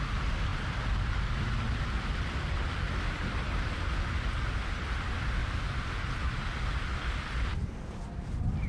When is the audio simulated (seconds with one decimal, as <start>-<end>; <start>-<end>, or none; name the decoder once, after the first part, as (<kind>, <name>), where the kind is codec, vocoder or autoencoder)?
2.7-4.0 (vocoder, BigVGAN v2); 5.4-6.1